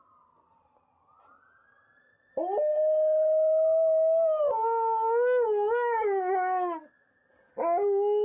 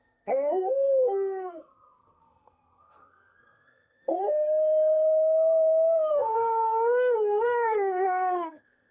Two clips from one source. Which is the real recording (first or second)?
first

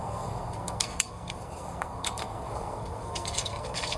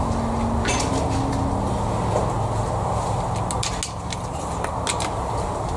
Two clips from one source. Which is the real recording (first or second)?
second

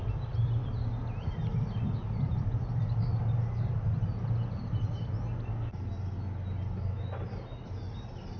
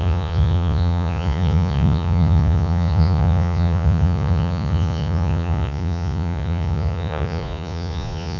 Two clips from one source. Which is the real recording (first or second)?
first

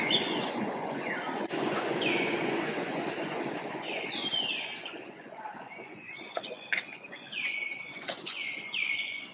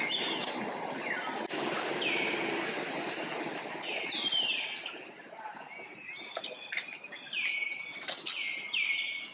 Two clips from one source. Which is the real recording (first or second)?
second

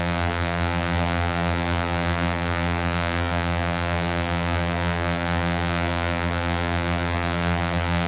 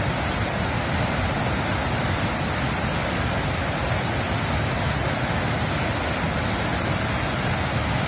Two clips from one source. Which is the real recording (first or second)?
second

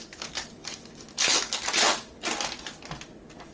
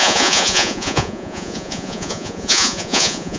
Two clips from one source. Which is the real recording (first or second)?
first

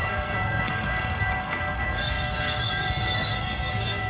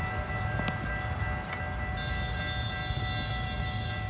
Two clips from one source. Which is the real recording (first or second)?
second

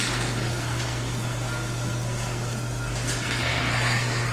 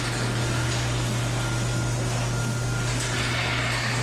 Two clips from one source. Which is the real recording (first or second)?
second